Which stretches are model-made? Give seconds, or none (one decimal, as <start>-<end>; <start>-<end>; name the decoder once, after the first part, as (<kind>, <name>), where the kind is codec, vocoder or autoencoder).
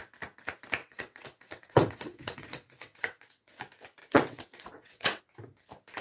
0.8-3.6 (vocoder, WaveNeXt); 4.0-5.2